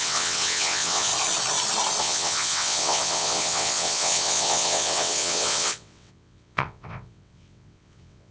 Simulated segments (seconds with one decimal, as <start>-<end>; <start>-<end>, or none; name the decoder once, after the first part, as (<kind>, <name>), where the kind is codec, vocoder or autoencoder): 0.0-1.1 (vocoder, WaveNeXt); 2.0-8.3